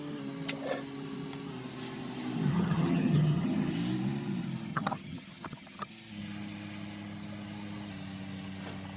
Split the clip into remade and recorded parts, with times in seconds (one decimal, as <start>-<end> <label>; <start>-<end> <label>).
0.0-2.5 recorded; 2.5-3.7 remade; 3.7-4.7 recorded; 4.7-5.9 remade; 5.9-9.0 recorded